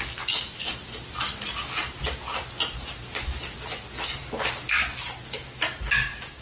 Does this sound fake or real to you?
real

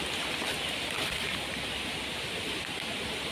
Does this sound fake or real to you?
real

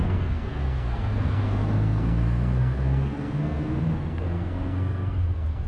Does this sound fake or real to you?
fake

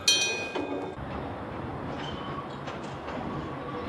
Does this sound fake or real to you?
real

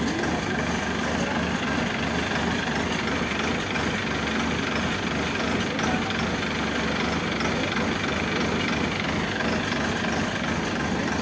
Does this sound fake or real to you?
real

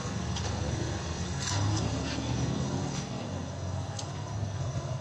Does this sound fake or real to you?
fake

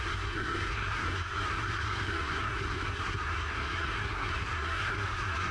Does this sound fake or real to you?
fake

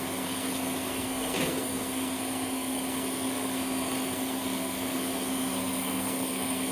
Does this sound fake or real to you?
fake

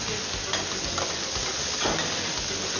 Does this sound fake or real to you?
real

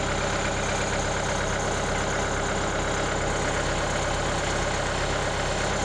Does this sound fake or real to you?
real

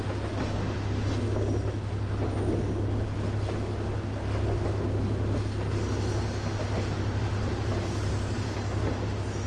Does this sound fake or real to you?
real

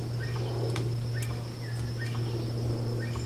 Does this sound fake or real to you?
real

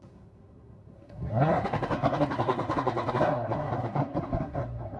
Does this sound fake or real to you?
fake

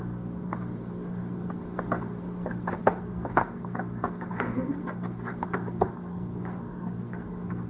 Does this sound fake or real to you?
fake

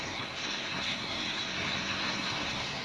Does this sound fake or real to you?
fake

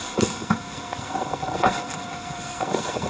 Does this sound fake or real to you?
fake